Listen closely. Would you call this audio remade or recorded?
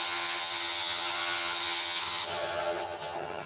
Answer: remade